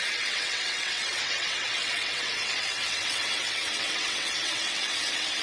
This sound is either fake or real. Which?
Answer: fake